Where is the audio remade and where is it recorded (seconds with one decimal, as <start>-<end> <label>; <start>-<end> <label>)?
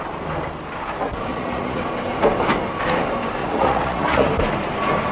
0.0-1.3 recorded; 1.3-1.8 remade; 1.8-3.4 recorded; 3.4-4.3 remade; 4.3-5.1 recorded